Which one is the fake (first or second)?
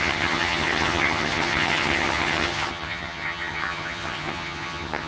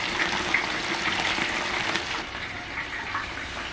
first